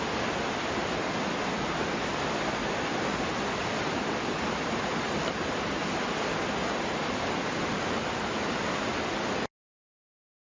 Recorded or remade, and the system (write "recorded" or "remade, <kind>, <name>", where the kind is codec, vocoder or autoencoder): recorded